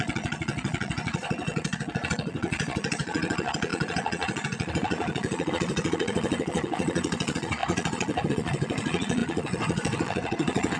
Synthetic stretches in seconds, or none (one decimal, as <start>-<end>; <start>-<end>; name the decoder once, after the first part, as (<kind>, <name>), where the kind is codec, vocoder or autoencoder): 0.0-10.8 (vocoder, Vocos)

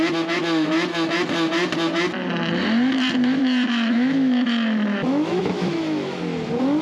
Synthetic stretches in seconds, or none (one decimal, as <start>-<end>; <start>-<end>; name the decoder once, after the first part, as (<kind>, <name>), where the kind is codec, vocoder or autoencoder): 3.4-6.2 (autoencoder, DAC-VAE)

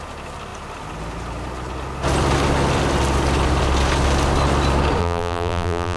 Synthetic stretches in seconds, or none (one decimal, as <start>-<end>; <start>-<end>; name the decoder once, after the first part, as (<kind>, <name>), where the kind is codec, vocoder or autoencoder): 5.0-6.0 (vocoder, BigVGAN v2)

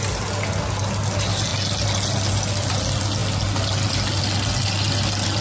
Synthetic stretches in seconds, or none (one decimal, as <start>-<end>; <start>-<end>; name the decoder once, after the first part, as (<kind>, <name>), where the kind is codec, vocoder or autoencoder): none

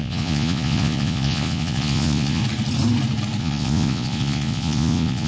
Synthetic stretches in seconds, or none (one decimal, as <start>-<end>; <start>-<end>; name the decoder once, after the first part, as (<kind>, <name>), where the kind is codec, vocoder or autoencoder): 0.0-2.4 (vocoder, Vocos); 3.4-5.3

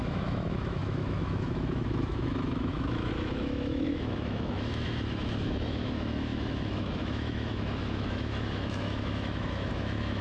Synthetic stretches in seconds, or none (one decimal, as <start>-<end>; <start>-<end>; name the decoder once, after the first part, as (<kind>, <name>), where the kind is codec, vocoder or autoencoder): 0.0-10.2 (autoencoder, DAC-VAE)

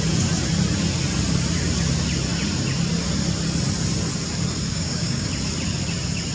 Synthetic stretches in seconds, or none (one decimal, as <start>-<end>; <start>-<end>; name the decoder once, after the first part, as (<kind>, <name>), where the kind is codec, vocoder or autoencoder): 4.7-5.3 (codec, DAC)

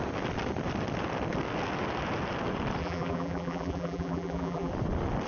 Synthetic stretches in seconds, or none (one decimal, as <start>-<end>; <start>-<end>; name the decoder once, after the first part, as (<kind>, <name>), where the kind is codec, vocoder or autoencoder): 2.8-4.7 (vocoder, BigVGAN v2)